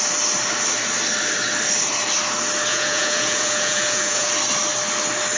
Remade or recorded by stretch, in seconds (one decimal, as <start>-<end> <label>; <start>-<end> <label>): 0.0-2.7 recorded; 2.7-4.3 remade; 4.3-5.4 recorded